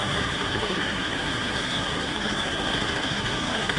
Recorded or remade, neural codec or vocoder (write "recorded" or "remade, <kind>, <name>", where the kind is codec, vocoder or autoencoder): remade, codec, SNAC